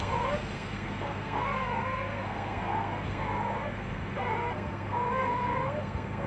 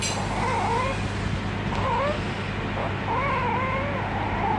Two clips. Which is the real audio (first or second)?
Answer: second